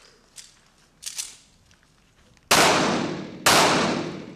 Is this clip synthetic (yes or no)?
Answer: no